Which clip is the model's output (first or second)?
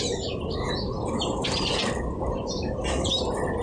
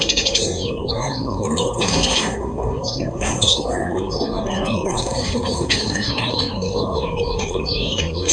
second